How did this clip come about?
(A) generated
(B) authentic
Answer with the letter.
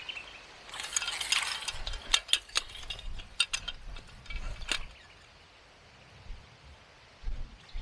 B